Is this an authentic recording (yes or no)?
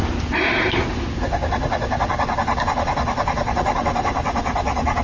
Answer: yes